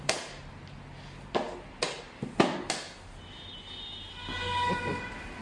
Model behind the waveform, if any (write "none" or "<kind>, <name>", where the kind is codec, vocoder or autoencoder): none